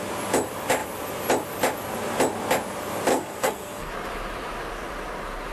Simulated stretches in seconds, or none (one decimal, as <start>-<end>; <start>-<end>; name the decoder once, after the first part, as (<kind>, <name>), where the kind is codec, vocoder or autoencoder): 3.1-3.9 (codec, SNAC)

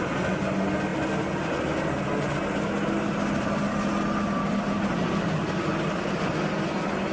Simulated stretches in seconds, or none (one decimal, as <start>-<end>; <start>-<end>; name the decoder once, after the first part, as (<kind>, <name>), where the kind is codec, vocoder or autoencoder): none

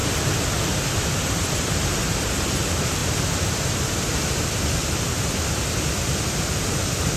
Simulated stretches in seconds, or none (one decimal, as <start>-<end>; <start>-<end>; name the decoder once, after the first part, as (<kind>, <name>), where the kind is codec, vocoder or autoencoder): 1.2-3.0 (vocoder, BigVGAN v2); 6.0-7.2

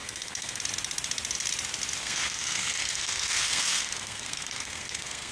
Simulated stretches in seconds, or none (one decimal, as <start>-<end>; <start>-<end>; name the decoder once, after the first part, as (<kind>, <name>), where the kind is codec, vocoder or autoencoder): 0.0-0.6 (codec, SNAC); 2.0-5.3

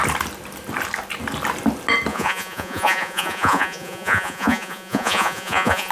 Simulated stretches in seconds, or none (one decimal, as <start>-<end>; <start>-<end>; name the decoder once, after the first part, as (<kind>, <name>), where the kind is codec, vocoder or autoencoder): 2.1-5.9 (vocoder, Vocos)

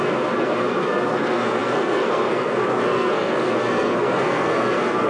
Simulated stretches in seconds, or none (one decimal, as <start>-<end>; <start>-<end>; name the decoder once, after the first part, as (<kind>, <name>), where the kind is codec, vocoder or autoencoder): 0.0-5.1 (codec, SNAC)

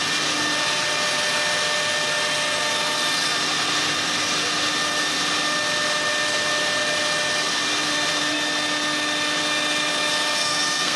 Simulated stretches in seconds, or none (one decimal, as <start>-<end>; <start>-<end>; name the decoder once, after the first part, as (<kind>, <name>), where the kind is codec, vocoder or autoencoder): 10.4-11.0 (codec, SNAC)

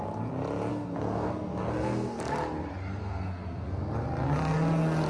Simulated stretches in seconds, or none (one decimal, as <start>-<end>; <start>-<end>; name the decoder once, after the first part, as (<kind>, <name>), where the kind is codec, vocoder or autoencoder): 0.7-2.2 (codec, SNAC); 3.0-3.8